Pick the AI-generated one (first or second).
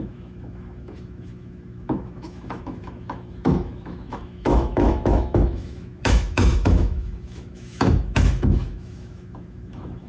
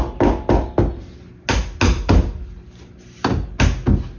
first